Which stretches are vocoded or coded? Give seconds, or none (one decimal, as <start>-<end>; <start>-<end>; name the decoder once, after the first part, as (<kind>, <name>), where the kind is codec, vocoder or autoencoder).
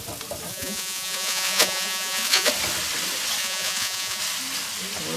0.5-2.5 (vocoder, Vocos); 3.4-4.2